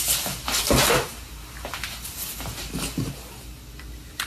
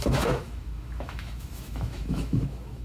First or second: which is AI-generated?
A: second